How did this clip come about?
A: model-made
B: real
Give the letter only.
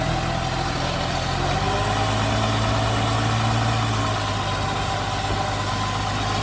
B